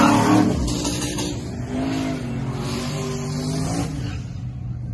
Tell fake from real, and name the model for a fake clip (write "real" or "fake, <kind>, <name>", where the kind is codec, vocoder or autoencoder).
real